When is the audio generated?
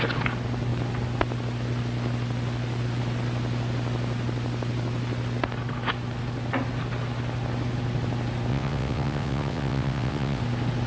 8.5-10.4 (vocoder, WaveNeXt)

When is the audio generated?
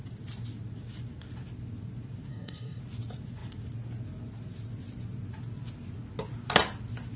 2.3-2.8 (codec, SNAC)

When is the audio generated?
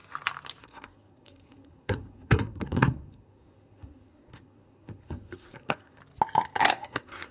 0.6-6.0 (codec, SNAC); 6.6-7.3